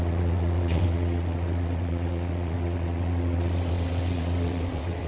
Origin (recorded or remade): remade